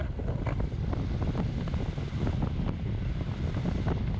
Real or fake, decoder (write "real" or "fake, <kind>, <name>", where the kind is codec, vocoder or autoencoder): real